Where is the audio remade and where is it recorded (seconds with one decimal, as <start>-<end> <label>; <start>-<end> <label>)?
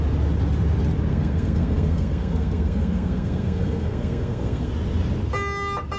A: 0.0-1.1 recorded; 1.1-4.7 remade; 4.7-6.0 recorded